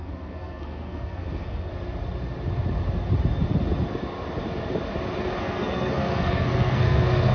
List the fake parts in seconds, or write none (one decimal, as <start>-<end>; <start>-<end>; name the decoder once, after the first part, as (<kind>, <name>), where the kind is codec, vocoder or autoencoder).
0.0-1.7 (codec, SNAC); 5.4-7.3